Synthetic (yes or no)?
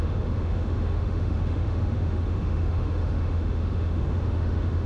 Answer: yes